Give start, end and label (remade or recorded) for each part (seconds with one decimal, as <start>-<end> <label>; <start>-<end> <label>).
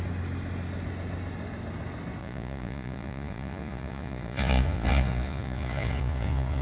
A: 0.0-2.2 recorded; 2.2-6.6 remade